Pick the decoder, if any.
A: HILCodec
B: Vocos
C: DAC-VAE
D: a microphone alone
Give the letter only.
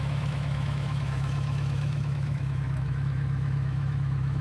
C